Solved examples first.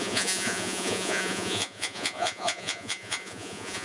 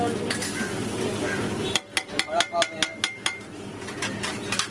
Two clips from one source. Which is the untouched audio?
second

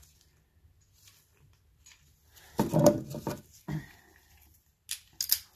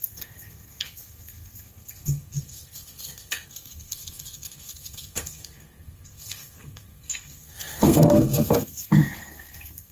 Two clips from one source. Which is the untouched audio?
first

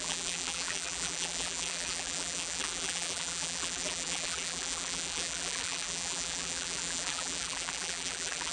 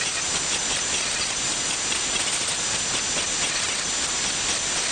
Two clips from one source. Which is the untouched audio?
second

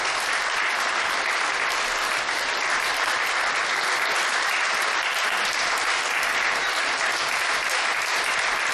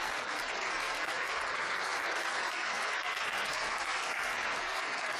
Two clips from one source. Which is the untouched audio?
first